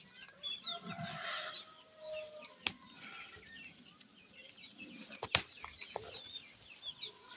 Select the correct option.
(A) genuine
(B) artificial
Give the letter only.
A